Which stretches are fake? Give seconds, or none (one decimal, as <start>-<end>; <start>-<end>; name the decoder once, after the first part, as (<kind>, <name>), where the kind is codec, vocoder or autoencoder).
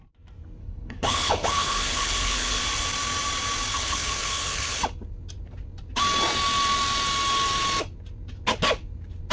0.6-2.6 (codec, HILCodec); 3.7-4.8